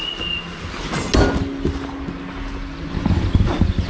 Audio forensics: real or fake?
real